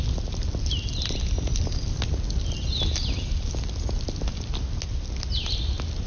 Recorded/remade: recorded